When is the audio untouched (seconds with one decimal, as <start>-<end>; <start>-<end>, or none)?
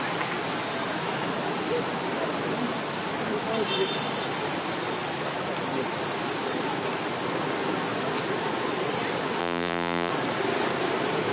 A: 0.0-9.4; 10.1-11.3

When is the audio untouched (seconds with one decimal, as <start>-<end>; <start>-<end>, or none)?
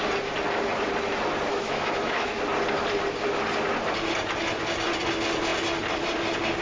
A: 0.0-1.5; 2.3-6.6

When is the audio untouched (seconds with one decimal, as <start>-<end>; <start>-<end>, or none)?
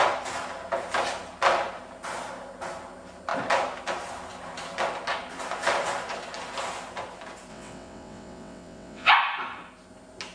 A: 0.0-7.5; 9.1-10.3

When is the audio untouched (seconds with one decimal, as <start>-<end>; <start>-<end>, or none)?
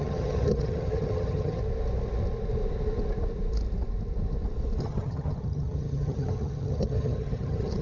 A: 1.6-4.8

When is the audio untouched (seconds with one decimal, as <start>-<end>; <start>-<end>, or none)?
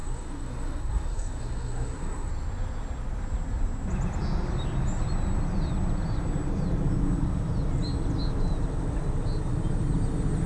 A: 2.3-10.5